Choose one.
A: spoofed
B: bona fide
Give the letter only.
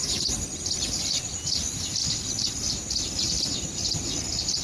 B